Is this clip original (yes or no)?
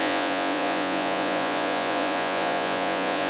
no